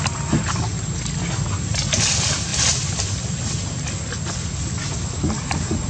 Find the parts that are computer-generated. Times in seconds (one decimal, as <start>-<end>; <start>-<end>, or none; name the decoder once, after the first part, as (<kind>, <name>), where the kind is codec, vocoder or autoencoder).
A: none